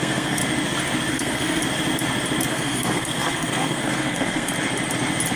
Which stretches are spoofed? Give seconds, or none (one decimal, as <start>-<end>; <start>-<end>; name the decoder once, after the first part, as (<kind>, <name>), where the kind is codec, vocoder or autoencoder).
0.0-0.4 (codec, SNAC); 1.1-1.6; 2.5-4.5